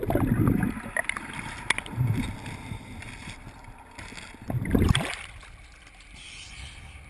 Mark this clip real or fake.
real